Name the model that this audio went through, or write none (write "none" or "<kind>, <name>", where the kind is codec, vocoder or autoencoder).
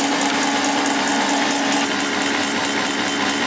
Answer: none